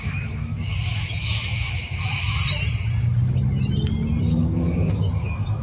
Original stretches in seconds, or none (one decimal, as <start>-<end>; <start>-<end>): 2.3-4.2